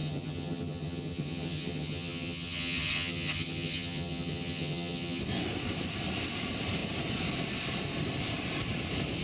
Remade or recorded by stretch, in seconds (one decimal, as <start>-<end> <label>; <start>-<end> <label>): 0.0-5.2 remade; 5.2-9.2 recorded